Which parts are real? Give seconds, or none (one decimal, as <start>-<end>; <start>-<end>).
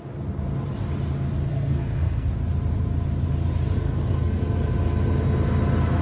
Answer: 0.0-1.5; 2.3-3.8; 4.4-6.0